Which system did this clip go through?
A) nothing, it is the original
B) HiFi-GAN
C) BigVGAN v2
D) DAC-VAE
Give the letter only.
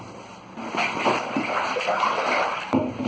C